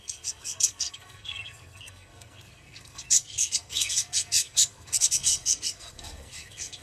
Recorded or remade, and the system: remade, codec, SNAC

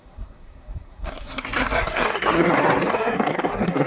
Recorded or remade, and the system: remade, codec, SNAC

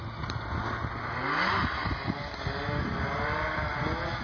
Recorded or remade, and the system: recorded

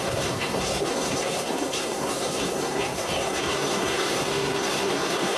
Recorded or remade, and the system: remade, codec, SNAC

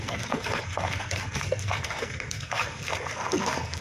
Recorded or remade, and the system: remade, codec, SNAC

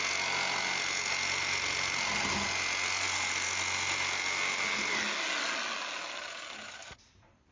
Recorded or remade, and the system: recorded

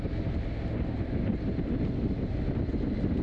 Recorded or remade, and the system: recorded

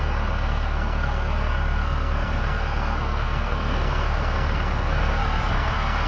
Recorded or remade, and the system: remade, codec, SNAC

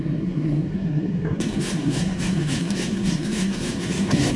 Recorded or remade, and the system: remade, codec, SNAC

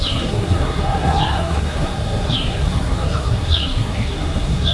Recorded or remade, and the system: remade, codec, SNAC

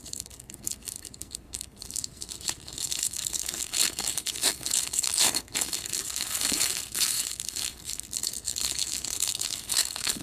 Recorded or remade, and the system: remade, codec, SNAC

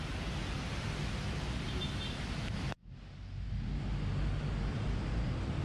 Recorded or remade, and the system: recorded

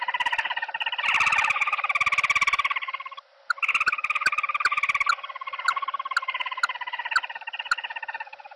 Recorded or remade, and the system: recorded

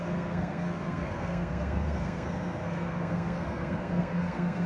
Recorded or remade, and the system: remade, codec, SNAC